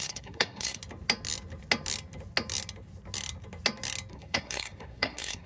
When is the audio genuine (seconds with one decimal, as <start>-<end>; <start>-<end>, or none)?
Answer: 0.8-4.1